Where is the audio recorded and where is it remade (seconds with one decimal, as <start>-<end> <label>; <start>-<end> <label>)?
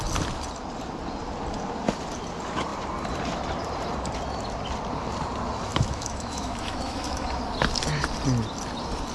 0.0-5.7 recorded; 5.7-7.4 remade; 7.4-9.1 recorded